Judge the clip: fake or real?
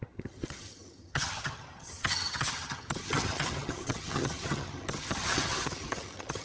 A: fake